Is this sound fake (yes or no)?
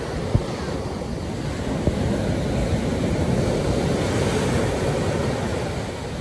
no